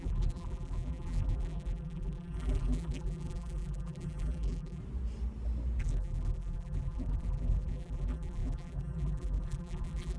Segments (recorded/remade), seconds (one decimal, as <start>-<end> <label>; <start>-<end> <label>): 0.0-4.8 remade; 4.8-5.8 recorded; 5.8-10.2 remade